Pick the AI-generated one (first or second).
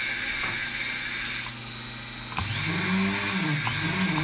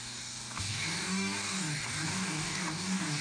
second